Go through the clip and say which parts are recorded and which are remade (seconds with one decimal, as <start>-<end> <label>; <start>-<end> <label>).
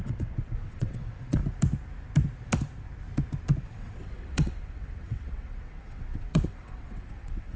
0.0-1.4 remade; 1.4-3.6 recorded; 3.6-7.6 remade